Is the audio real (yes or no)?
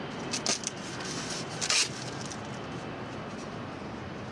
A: yes